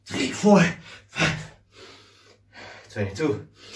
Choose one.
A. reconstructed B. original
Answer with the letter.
B